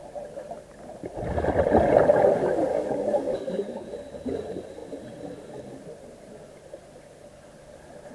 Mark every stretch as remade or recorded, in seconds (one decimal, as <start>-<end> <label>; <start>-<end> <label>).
0.0-2.7 recorded; 2.7-3.9 remade; 3.9-8.1 recorded